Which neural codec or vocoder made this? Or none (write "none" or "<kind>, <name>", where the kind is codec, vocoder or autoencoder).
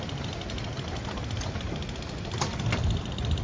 none